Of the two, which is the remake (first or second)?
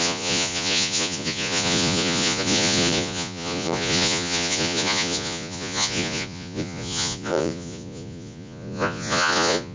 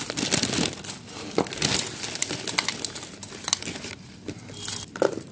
first